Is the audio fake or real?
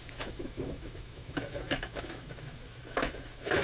fake